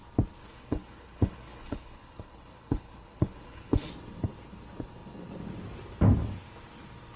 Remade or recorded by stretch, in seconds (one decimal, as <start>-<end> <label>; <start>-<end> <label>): 0.0-0.4 recorded; 0.4-3.9 remade; 3.9-7.2 recorded